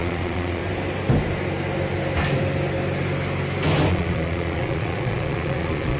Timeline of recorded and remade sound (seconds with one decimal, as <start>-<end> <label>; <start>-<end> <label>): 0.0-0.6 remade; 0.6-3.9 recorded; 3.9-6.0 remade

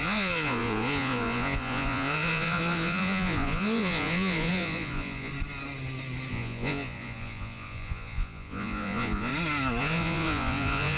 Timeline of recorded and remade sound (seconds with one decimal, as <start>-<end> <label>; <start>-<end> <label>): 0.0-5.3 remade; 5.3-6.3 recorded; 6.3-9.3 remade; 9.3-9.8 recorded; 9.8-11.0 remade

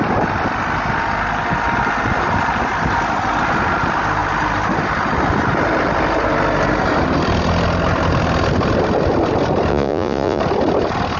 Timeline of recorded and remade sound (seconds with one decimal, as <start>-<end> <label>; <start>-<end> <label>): 0.0-9.7 recorded; 9.7-10.4 remade; 10.4-11.2 recorded

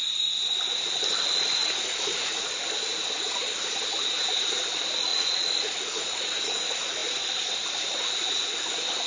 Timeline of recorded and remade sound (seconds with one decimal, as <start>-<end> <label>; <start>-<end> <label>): 0.0-1.6 recorded; 1.6-2.5 remade; 2.5-5.1 recorded; 5.1-6.4 remade; 6.4-9.1 recorded

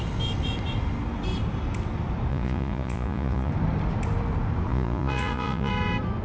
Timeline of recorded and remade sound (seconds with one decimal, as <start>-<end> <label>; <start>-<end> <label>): 0.0-2.3 recorded; 2.3-3.5 remade; 3.5-4.7 recorded; 4.7-5.7 remade; 5.7-6.2 recorded